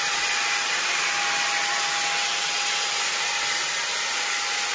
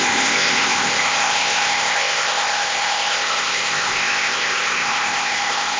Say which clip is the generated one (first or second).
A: second